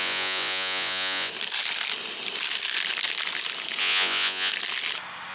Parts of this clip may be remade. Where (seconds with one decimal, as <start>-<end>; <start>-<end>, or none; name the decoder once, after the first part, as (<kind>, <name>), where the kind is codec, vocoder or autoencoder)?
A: 0.0-1.3 (vocoder, Vocos); 3.8-4.5